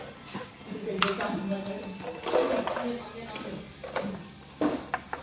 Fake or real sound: real